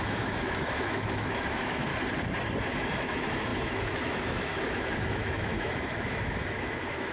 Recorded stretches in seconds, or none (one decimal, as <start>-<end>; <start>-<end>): 1.9-2.6